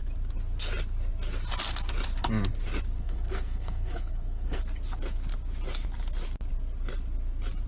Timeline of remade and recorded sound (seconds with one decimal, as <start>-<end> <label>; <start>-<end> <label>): 0.0-3.0 recorded; 3.0-4.6 remade; 4.6-7.7 recorded